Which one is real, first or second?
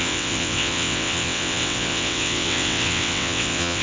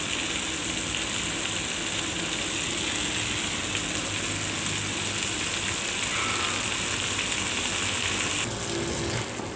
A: second